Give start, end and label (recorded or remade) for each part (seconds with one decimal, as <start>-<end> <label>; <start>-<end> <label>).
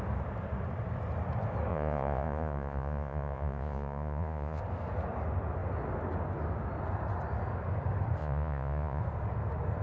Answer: 0.0-1.7 recorded; 1.7-4.6 remade; 4.6-8.2 recorded; 8.2-9.0 remade; 9.0-9.8 recorded